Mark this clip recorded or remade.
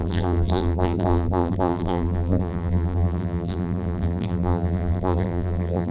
remade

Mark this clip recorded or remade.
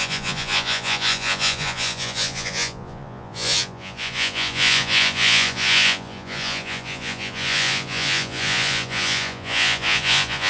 remade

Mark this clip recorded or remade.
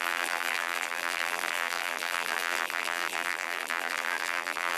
remade